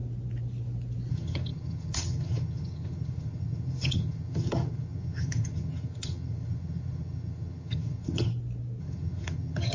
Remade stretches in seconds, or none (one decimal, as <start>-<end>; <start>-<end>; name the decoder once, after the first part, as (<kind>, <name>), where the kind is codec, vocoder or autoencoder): 1.1-8.3 (vocoder, HiFi-GAN); 8.8-9.7

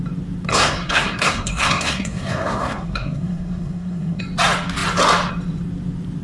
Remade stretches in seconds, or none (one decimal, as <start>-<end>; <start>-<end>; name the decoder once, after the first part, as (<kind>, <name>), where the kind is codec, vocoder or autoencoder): 0.5-4.2 (codec, SNAC)

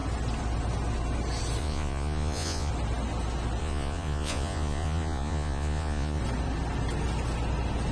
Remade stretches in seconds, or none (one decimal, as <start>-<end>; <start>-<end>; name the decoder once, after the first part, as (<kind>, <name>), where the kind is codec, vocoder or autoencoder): 1.6-2.7 (vocoder, Vocos); 3.6-6.2

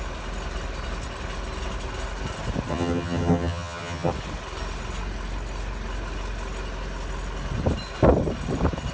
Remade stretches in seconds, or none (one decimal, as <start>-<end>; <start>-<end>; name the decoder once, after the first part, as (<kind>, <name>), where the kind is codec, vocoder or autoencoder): 2.7-4.1 (vocoder, HiFi-GAN)

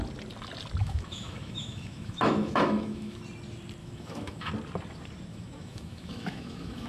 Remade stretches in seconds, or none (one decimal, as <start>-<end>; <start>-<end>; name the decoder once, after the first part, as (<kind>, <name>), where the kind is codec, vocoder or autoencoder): 0.8-3.2 (autoencoder, DAC-VAE); 3.8-4.5; 5.3-6.9

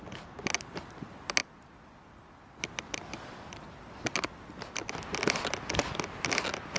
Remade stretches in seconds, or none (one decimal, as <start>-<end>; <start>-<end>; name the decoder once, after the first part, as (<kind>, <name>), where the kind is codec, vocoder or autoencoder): none

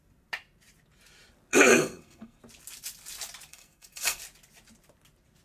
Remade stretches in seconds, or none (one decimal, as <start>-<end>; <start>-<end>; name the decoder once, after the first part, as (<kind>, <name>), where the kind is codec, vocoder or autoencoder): 1.5-2.4 (codec, SNAC); 3.5-4.2

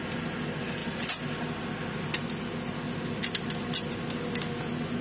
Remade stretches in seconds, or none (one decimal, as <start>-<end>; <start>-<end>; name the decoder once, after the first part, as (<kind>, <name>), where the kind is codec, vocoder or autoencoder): none